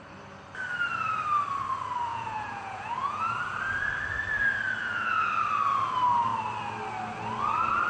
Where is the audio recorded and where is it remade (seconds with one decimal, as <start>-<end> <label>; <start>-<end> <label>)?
0.0-2.1 recorded; 2.1-3.2 remade; 3.2-4.8 recorded; 4.8-5.3 remade; 5.3-7.9 recorded